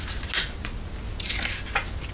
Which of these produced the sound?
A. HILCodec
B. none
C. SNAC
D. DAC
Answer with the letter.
B